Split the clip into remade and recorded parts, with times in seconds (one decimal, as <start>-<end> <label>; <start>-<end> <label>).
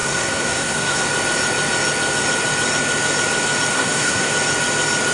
0.0-1.0 remade; 1.0-3.7 recorded; 3.7-4.3 remade; 4.3-5.1 recorded